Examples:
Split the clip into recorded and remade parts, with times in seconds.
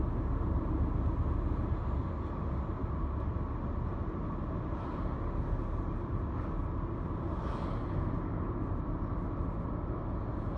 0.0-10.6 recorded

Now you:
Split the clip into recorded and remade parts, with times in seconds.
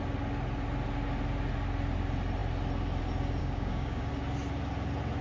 0.0-3.4 recorded; 3.4-4.1 remade; 4.1-5.2 recorded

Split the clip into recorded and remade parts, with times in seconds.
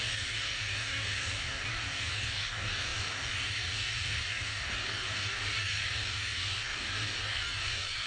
0.0-8.1 remade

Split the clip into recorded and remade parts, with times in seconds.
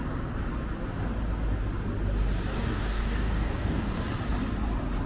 0.0-2.5 recorded; 2.5-4.0 remade; 4.0-5.1 recorded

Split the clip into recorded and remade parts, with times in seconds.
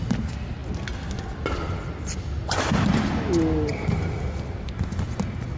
0.0-5.6 recorded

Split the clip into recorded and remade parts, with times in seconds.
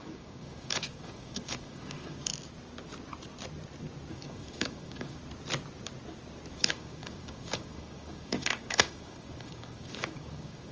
0.0-2.3 remade; 2.3-4.1 recorded; 4.1-5.2 remade; 5.2-6.6 recorded; 6.6-10.7 remade